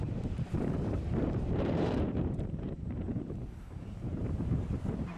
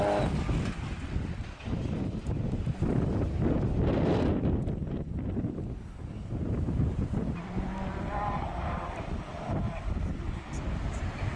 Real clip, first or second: second